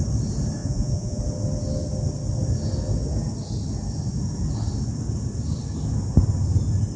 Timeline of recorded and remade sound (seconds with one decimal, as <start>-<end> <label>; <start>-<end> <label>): 0.0-0.6 recorded; 0.6-1.2 remade; 1.2-7.0 recorded